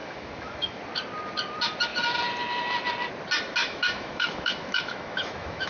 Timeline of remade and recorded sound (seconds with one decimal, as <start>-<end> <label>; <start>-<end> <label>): 0.0-0.8 remade; 0.8-3.6 recorded; 3.6-5.7 remade